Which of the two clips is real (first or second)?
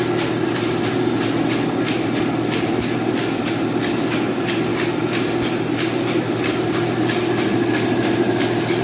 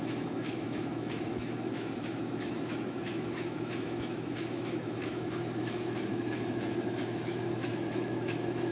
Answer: first